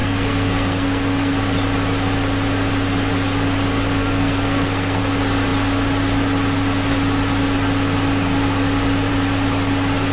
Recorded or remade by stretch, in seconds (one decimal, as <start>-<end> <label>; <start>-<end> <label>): 0.0-1.4 remade; 1.4-4.0 recorded; 4.0-5.0 remade; 5.0-10.1 recorded